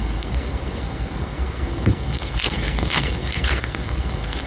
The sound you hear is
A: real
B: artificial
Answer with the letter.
B